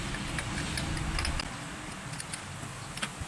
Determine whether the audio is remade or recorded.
recorded